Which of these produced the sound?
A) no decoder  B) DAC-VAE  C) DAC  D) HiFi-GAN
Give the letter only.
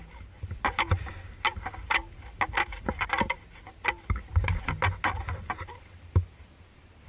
A